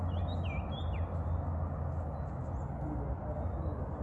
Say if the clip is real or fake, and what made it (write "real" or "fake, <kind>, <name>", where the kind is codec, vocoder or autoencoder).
real